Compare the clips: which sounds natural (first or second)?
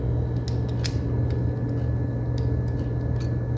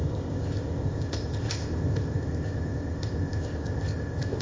first